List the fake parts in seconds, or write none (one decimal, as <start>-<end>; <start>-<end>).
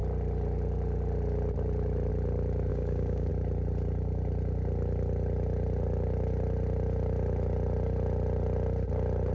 2.7-3.3